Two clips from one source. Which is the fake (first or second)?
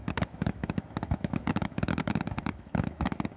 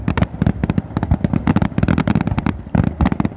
first